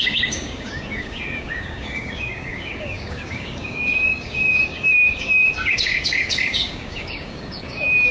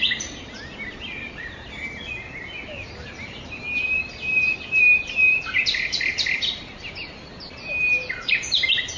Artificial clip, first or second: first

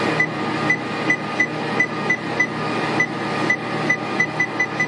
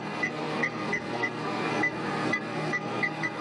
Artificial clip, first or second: second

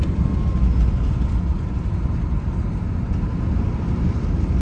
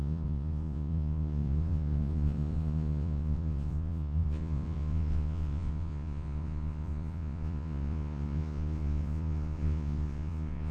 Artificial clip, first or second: second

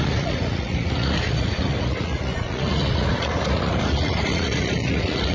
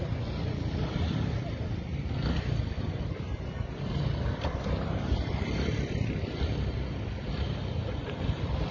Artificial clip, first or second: first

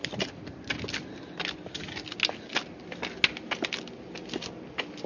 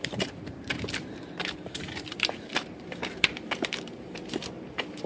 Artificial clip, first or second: second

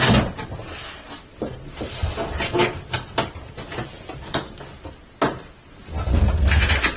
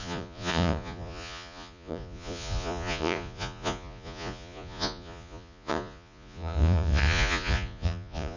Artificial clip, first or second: second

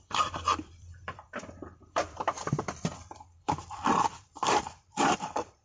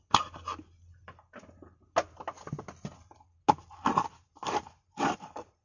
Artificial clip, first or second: first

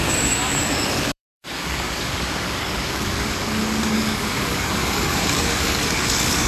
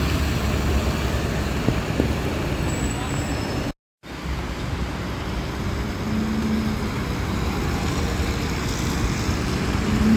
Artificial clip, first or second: first